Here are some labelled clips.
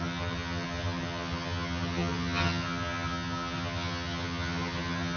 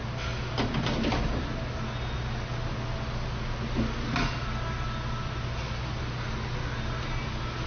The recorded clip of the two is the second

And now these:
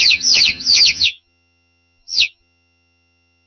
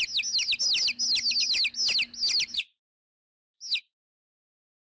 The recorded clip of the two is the second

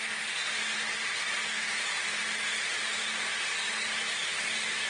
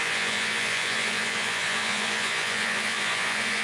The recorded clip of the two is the first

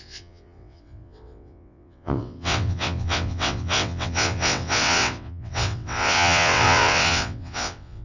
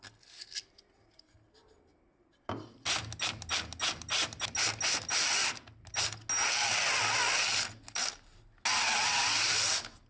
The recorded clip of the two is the second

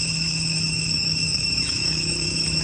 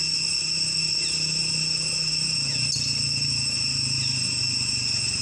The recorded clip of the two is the second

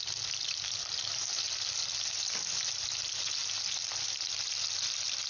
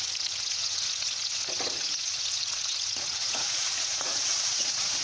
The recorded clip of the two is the first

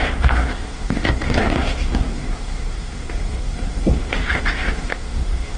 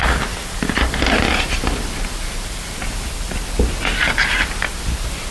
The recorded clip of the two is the second